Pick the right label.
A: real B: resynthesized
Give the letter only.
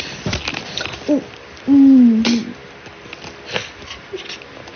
A